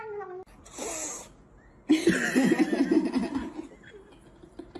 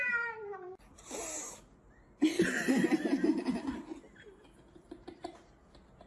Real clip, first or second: first